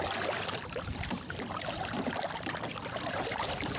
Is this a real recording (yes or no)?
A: no